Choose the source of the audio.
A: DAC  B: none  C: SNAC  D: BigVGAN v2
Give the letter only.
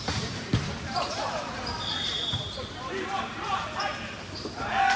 D